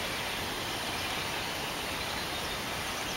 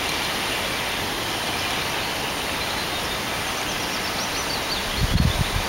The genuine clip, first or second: second